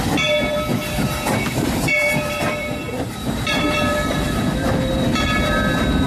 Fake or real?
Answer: fake